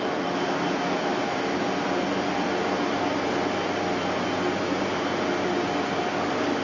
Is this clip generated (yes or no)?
no